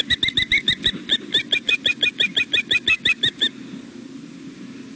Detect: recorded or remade recorded